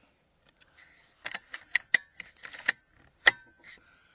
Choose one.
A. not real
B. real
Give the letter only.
B